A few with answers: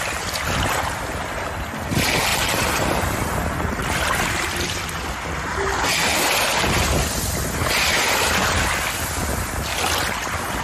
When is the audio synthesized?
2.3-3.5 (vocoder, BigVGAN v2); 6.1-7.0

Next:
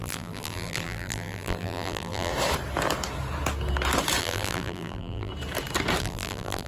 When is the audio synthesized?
0.0-2.3 (vocoder, BigVGAN v2); 4.2-5.3; 6.0-6.7

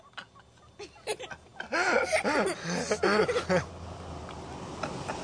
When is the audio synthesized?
none

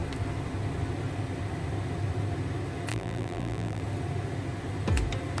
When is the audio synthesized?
2.9-3.8 (vocoder, BigVGAN v2)

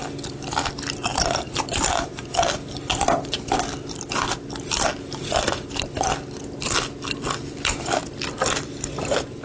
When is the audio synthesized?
1.1-2.2 (vocoder, BigVGAN v2)

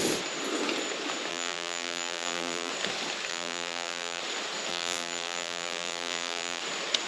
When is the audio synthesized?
1.3-2.7 (vocoder, BigVGAN v2); 3.3-4.2; 4.7-6.6